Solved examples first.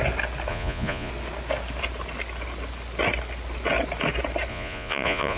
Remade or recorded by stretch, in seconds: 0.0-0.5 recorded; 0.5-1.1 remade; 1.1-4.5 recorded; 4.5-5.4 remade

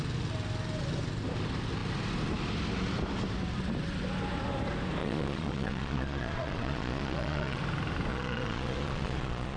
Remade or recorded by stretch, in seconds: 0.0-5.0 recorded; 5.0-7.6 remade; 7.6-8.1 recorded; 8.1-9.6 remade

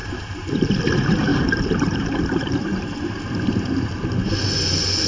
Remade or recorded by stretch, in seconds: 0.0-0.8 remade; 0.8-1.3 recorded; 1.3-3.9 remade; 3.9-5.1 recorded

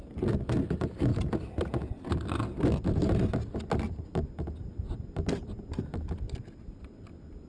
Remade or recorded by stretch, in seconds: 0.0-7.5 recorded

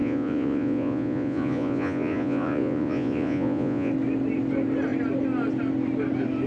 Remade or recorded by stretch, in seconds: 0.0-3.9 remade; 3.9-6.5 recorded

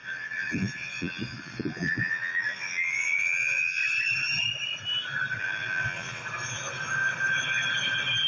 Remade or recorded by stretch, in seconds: 0.0-3.8 remade; 3.8-5.4 recorded; 5.4-6.2 remade; 6.2-8.3 recorded

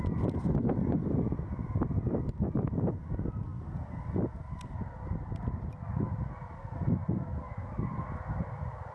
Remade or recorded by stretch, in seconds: 0.0-8.9 recorded

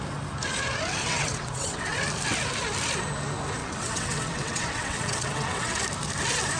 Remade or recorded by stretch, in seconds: 0.0-1.0 recorded; 1.0-2.0 remade; 2.0-3.6 recorded; 3.6-5.8 remade; 5.8-6.6 recorded